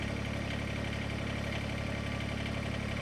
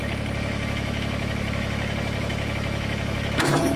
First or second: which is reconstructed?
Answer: second